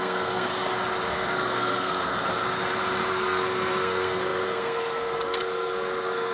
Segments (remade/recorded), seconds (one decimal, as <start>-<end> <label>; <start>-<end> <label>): 0.0-0.5 remade; 0.5-1.1 recorded; 1.1-2.3 remade; 2.3-3.1 recorded; 3.1-6.3 remade